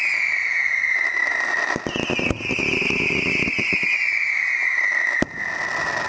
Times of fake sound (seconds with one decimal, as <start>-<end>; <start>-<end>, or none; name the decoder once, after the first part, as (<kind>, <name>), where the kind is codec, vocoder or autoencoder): none